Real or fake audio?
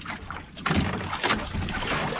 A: real